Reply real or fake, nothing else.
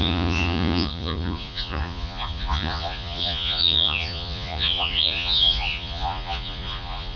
fake